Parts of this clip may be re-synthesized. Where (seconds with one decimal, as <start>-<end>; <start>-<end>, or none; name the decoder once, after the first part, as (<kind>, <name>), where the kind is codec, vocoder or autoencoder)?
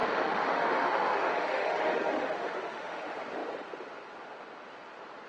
0.0-3.0 (autoencoder, DAC-VAE)